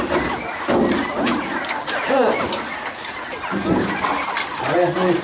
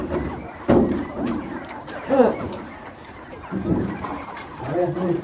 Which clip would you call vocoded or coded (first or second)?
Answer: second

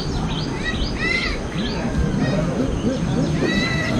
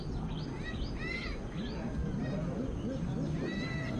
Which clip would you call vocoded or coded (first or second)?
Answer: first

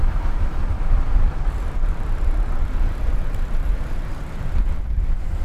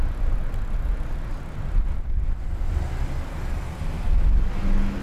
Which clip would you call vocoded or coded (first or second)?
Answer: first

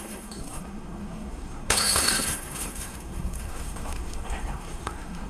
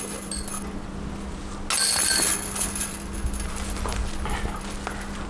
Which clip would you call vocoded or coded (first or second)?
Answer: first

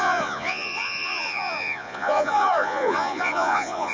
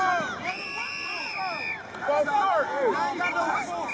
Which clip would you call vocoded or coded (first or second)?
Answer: first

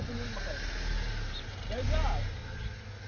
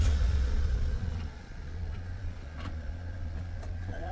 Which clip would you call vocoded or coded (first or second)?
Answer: second